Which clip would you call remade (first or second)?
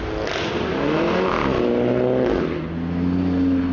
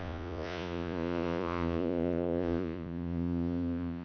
second